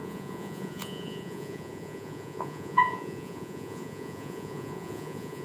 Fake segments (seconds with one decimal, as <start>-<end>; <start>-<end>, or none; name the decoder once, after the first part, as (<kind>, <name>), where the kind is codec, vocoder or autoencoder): 0.0-5.4 (vocoder, Vocos)

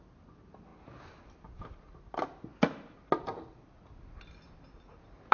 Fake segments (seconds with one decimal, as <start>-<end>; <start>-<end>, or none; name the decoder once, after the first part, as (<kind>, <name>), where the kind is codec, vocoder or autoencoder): none

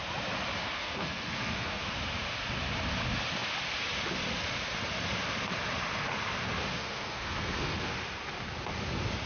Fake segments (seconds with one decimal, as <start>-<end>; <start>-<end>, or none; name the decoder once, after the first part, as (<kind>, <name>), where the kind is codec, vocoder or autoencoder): 0.6-1.9 (codec, SNAC); 6.7-7.9

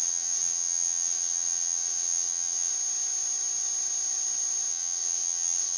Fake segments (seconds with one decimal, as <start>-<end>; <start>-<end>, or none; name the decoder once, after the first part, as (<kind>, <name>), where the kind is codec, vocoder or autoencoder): 0.0-2.7 (vocoder, WaveNeXt); 4.7-5.8

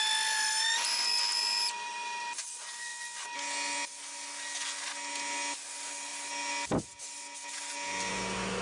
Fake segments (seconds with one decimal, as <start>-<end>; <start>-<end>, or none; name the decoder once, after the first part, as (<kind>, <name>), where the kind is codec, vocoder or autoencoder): none

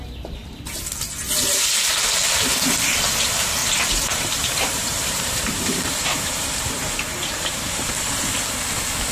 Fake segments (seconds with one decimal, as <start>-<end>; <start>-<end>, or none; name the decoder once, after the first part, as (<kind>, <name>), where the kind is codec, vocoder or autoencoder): 3.6-7.9 (vocoder, BigVGAN v2)